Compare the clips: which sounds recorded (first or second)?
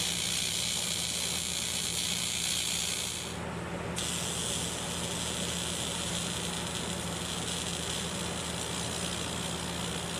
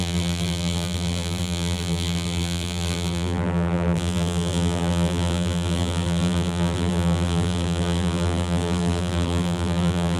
first